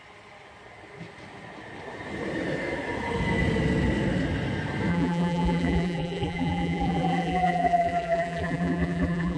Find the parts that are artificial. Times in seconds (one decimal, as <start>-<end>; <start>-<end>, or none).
4.9-9.4